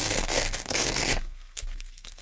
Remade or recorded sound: remade